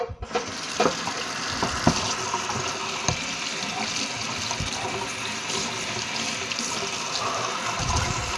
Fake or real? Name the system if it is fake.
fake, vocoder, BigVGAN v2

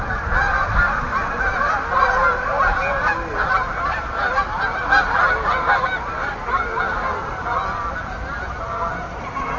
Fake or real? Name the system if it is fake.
real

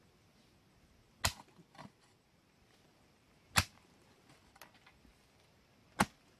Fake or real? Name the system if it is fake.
real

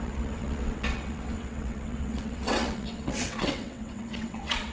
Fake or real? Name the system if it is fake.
fake, vocoder, WaveNeXt